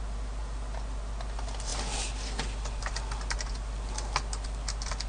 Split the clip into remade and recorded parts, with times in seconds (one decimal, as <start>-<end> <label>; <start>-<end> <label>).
0.0-5.1 recorded